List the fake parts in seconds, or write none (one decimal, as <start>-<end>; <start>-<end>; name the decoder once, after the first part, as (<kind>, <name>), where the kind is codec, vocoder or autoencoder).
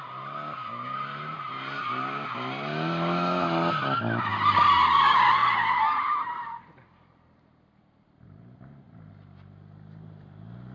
5.4-9.1 (vocoder, BigVGAN v2)